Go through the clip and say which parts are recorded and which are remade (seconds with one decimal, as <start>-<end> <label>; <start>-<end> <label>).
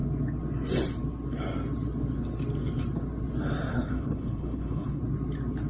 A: 0.0-3.7 recorded; 3.7-5.0 remade; 5.0-5.7 recorded